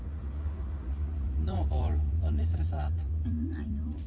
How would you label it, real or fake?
fake